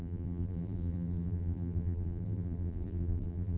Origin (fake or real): fake